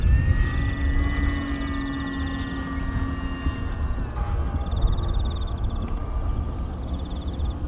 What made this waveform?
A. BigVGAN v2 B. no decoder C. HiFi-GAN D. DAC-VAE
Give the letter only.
B